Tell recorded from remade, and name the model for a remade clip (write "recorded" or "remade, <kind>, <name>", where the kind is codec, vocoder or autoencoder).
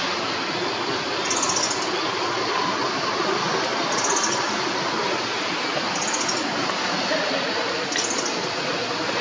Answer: recorded